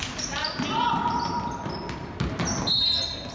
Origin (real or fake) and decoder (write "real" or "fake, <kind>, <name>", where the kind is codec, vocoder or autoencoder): real